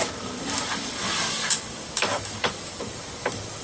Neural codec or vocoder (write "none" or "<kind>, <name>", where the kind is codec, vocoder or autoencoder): codec, DAC